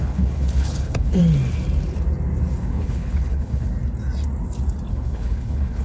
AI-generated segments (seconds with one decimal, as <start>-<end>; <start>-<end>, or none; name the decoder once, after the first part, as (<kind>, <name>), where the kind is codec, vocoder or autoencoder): 0.0-1.2 (codec, HILCodec); 2.6-3.7; 4.9-5.8